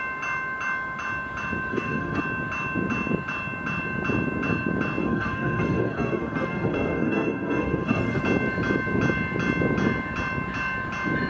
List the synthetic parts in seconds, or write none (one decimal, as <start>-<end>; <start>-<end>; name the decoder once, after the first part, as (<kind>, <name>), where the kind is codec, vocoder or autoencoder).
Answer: 1.7-2.2 (codec, SNAC); 5.0-8.2